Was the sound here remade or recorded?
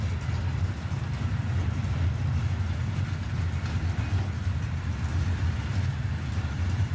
recorded